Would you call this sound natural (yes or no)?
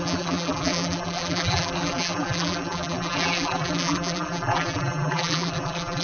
no